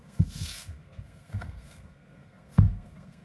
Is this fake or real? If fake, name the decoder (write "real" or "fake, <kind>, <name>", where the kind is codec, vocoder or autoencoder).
fake, codec, SNAC